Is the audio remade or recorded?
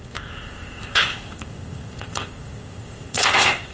remade